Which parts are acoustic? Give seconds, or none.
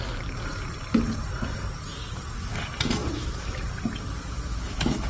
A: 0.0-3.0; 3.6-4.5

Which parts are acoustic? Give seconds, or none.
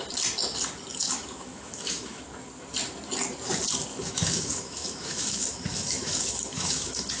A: 0.0-0.9; 2.2-3.9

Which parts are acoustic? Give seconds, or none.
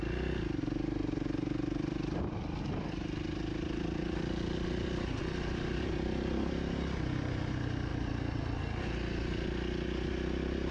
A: 0.0-10.7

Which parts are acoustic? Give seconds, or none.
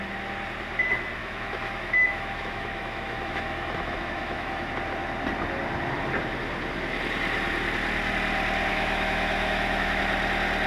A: 0.0-1.2; 4.7-8.7; 10.0-10.7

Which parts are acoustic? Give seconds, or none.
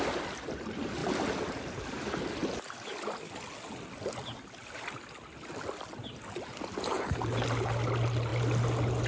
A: 0.0-9.1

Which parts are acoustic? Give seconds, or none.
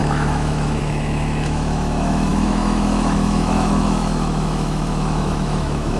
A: none